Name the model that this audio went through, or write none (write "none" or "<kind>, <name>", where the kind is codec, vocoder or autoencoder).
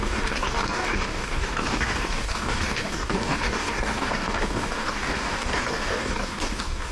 codec, DAC